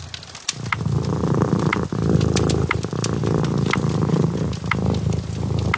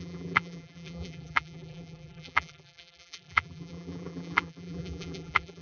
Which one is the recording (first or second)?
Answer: first